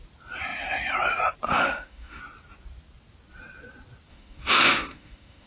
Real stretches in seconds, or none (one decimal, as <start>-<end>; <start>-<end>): 0.0-1.5; 2.2-4.1

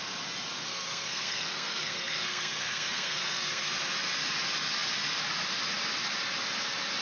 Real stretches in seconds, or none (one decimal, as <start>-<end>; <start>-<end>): 0.0-0.7; 3.7-7.0

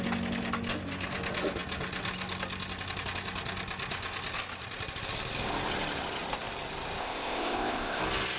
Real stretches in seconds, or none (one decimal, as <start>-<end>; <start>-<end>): 0.0-7.0; 8.0-8.4

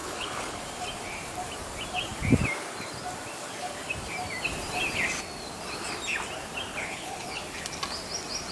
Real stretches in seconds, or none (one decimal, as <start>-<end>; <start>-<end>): 0.6-6.8; 7.4-8.5

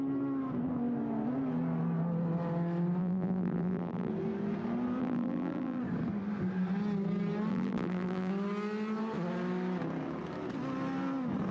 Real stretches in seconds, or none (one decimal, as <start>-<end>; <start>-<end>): 0.0-3.0; 4.1-5.0; 5.8-7.5; 8.3-11.5